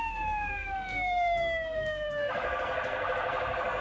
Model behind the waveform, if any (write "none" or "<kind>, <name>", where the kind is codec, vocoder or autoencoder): codec, SNAC